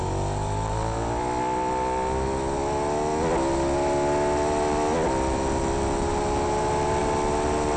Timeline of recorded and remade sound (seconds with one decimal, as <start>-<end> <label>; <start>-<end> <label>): 0.0-7.8 recorded